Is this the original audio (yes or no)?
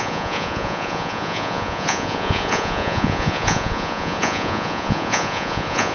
no